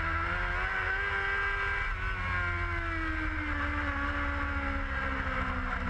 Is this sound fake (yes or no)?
no